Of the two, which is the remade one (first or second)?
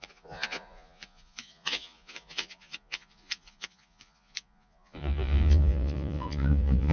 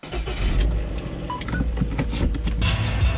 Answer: first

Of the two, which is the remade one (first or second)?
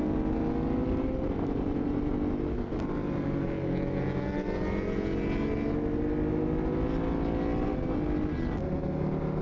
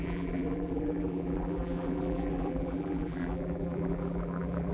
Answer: second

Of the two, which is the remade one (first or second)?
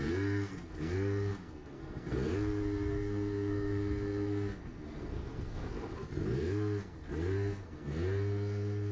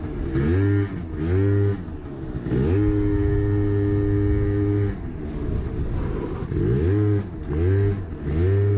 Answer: first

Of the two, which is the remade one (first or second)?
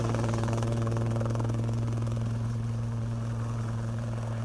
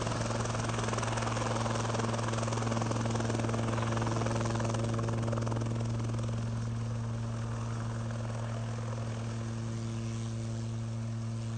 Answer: first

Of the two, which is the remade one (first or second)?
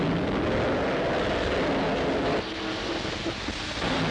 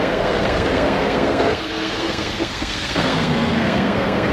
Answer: second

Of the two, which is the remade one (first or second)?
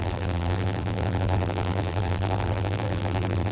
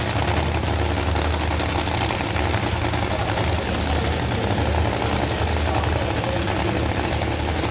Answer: first